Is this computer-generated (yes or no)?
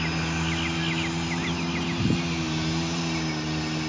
no